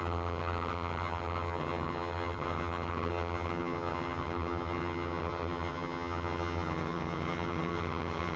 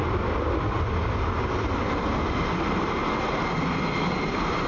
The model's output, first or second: first